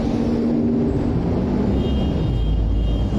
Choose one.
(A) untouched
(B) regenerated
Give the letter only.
A